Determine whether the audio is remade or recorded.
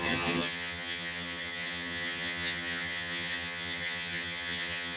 remade